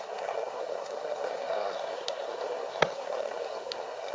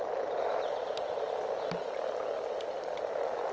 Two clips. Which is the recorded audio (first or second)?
second